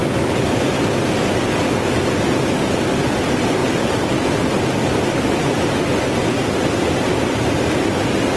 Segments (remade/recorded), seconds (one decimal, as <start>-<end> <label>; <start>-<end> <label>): 0.0-0.7 remade; 0.7-8.4 recorded